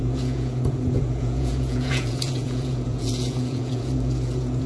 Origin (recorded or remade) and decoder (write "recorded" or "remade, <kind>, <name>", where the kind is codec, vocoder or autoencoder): remade, vocoder, Vocos